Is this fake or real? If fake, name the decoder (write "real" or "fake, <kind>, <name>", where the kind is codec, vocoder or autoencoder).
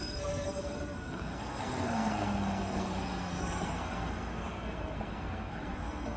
fake, codec, SNAC